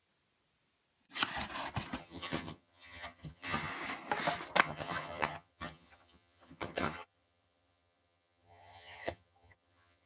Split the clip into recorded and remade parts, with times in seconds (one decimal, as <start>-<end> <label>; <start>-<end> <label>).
0.0-2.0 recorded; 2.0-3.7 remade; 3.7-4.6 recorded; 4.6-10.1 remade